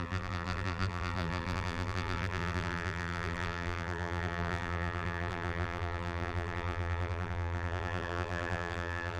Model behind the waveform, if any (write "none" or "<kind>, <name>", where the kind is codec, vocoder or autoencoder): vocoder, BigVGAN v2